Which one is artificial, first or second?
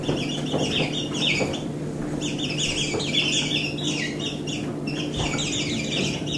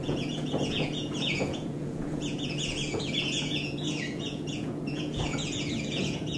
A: second